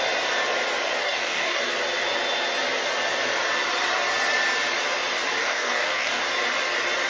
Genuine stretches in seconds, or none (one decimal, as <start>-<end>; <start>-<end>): 0.0-1.0; 1.6-5.4; 6.2-7.1

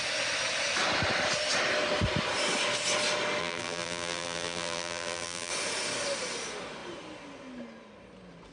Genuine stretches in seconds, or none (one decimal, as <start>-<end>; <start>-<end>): 0.0-3.4; 5.5-8.5

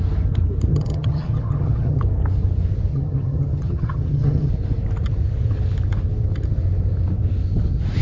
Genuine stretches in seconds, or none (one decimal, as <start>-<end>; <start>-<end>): 0.0-0.7; 2.0-2.9; 4.5-8.0